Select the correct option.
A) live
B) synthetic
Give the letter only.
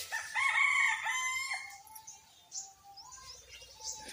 A